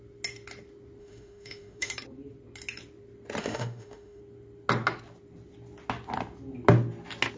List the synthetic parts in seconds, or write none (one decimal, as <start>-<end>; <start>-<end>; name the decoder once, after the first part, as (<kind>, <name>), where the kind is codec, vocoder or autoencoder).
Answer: 1.0-1.9 (autoencoder, DAC-VAE); 3.4-4.2